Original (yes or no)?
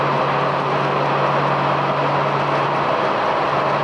yes